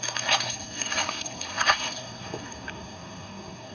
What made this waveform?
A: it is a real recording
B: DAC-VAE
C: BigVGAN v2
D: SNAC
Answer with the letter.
D